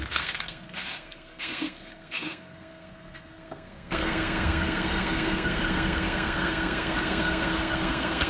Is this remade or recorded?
remade